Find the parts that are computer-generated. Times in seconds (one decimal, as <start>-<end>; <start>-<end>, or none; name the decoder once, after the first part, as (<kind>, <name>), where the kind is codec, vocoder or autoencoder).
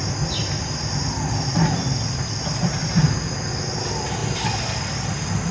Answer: 0.4-0.9 (vocoder, BigVGAN v2)